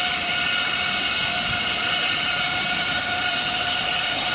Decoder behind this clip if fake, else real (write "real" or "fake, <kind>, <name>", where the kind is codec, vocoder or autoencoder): fake, vocoder, BigVGAN v2